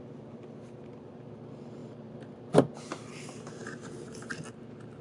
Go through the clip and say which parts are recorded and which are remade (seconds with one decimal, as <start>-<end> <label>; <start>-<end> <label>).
0.0-5.0 recorded